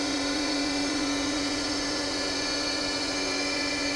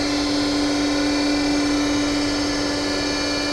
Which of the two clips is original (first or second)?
second